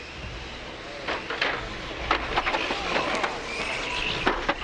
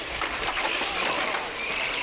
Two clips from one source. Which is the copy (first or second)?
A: second